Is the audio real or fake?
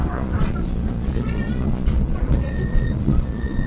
fake